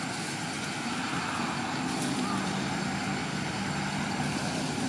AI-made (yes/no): no